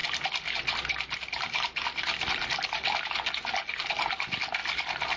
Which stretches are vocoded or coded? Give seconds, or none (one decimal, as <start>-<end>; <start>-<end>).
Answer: none